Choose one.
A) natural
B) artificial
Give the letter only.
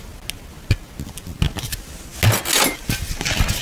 A